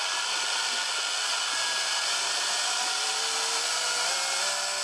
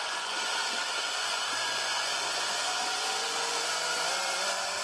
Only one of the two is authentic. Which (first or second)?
first